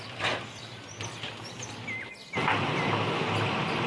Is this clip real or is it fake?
real